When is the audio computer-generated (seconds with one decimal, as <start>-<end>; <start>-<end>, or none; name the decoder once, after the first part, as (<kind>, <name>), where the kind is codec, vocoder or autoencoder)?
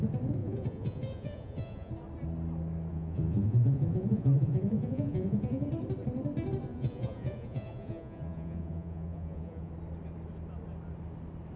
0.4-1.9 (vocoder, Vocos); 2.9-5.7; 6.7-9.7